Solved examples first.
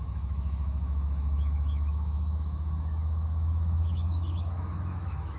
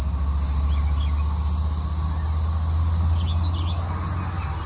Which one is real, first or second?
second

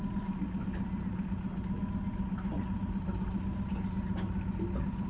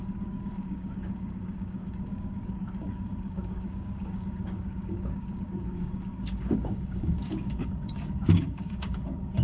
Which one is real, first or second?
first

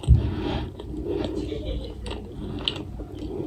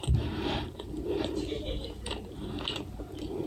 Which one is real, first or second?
first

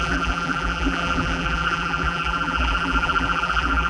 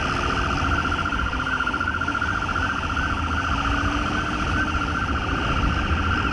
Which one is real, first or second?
second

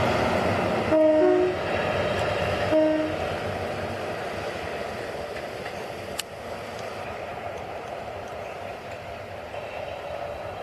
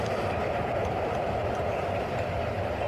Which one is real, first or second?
first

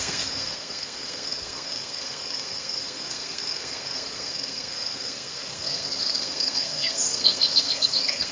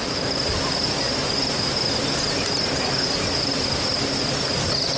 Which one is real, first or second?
second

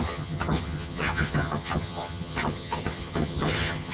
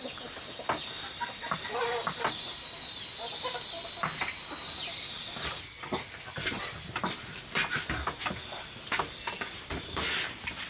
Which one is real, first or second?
second